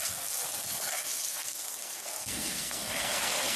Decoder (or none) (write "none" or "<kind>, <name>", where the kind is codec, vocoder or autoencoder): codec, SNAC